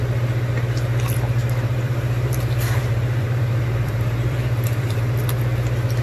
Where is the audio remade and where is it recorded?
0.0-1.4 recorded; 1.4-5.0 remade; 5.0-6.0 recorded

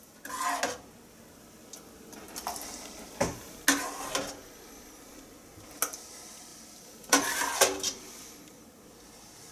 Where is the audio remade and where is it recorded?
0.0-4.4 recorded; 4.4-5.1 remade; 5.1-6.5 recorded; 6.5-8.1 remade; 8.1-9.5 recorded